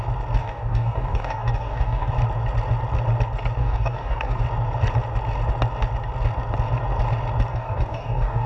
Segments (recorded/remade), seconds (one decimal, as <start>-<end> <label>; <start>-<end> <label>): 0.0-0.4 recorded; 0.4-2.1 remade; 2.1-3.6 recorded; 3.6-4.4 remade; 4.4-7.5 recorded; 7.5-8.5 remade